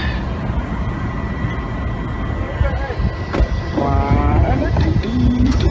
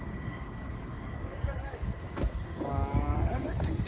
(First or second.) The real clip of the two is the first